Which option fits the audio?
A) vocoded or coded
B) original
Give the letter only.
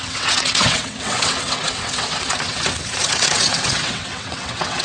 A